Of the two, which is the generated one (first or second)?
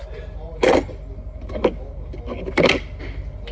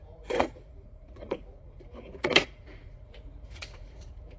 second